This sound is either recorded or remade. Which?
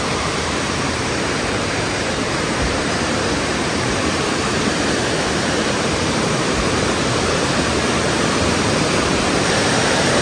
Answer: remade